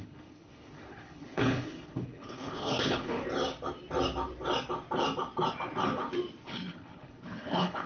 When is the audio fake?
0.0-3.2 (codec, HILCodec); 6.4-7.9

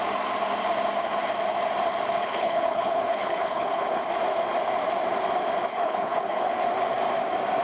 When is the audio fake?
2.2-4.0 (codec, HILCodec); 5.7-6.5

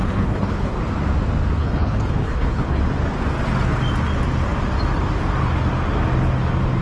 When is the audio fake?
0.0-0.8 (codec, HILCodec); 1.6-2.8

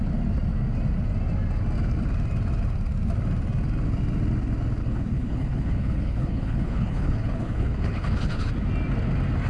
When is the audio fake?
4.8-8.5 (codec, HILCodec)

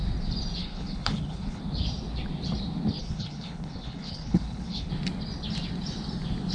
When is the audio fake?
0.6-1.6 (codec, HILCodec); 3.0-4.9

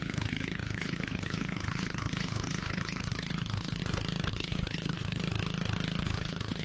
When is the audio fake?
0.0-3.8 (codec, HILCodec); 4.3-5.2; 6.0-6.6